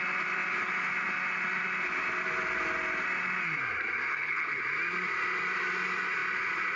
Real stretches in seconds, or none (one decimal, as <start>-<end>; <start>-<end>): 0.0-4.1; 4.6-6.8